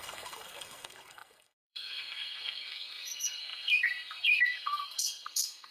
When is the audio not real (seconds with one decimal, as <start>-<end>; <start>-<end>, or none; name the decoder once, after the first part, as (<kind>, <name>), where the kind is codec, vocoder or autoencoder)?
0.0-5.7 (codec, SNAC)